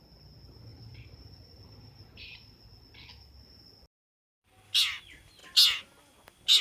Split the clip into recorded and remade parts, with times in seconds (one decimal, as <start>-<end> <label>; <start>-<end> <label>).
0.0-0.7 recorded; 0.7-1.2 remade; 1.2-6.6 recorded